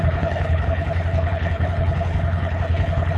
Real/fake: fake